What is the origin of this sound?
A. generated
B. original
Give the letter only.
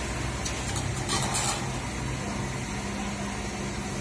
B